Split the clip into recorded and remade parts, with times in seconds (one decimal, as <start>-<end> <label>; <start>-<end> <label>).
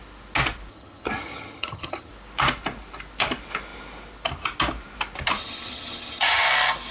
0.0-0.7 recorded; 0.7-2.1 remade; 2.1-5.4 recorded; 5.4-6.4 remade; 6.4-6.9 recorded